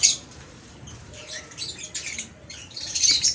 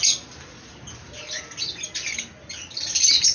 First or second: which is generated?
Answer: first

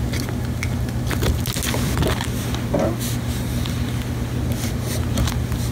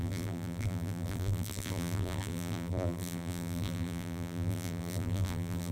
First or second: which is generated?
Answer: second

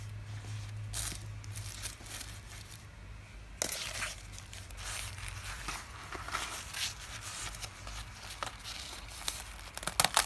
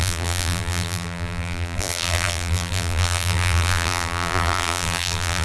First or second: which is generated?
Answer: second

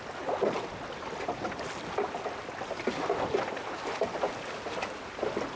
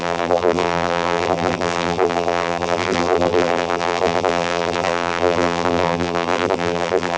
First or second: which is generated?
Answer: second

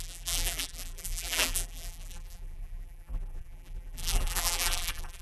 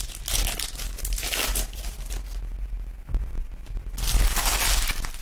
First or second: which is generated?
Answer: first